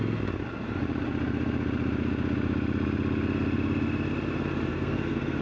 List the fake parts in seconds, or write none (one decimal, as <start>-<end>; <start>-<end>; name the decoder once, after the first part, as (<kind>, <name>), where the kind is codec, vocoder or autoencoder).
4.7-5.4 (codec, SNAC)